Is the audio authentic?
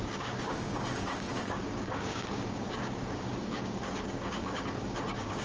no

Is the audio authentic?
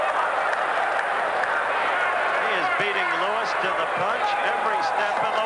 yes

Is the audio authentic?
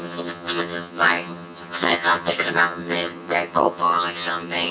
no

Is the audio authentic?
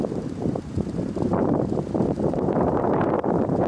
no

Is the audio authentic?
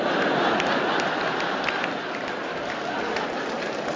yes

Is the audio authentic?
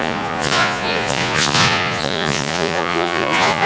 no